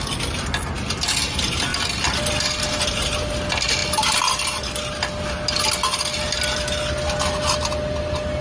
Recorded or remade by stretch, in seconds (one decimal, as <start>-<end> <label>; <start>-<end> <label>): 0.0-8.4 recorded

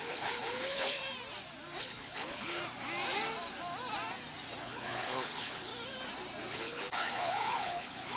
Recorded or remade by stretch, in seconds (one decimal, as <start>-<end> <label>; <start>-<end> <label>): 0.0-1.0 remade; 1.0-1.8 recorded; 1.8-2.6 remade; 2.6-4.6 recorded; 4.6-5.7 remade; 5.7-6.5 recorded; 6.5-8.2 remade